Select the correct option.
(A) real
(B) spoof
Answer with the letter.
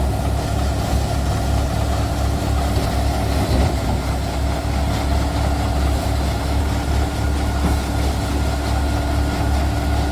A